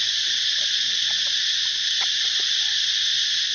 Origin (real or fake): real